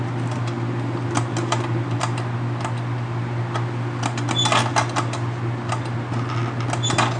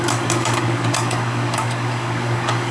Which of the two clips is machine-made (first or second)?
second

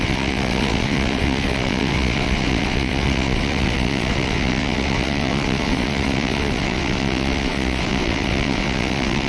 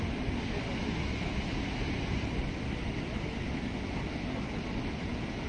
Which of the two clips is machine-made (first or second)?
first